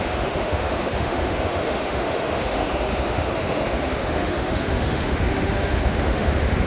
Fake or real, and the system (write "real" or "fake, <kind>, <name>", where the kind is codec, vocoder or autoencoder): fake, autoencoder, DAC-VAE